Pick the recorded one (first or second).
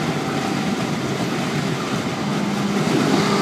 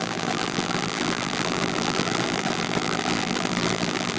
first